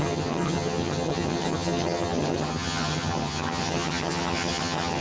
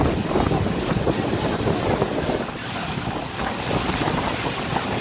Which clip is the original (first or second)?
second